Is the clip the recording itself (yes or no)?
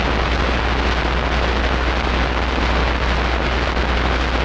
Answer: yes